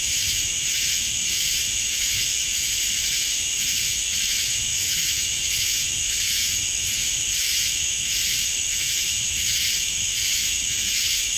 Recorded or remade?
remade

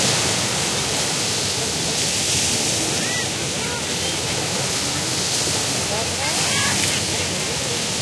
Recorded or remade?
recorded